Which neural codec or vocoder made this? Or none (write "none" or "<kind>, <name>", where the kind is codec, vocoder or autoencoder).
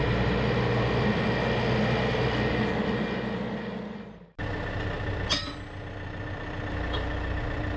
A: none